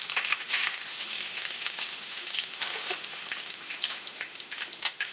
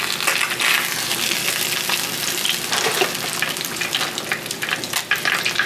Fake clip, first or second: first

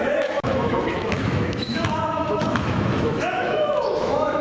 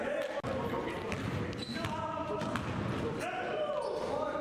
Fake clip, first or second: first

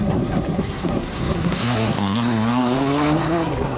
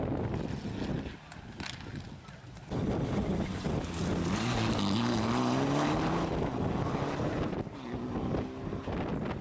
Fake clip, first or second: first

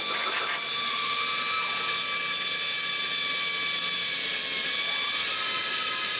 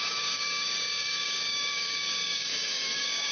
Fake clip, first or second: second